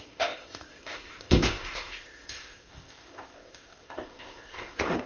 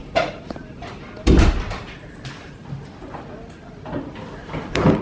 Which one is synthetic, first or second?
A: first